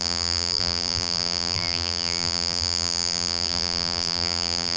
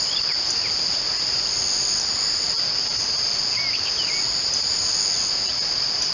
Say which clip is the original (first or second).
second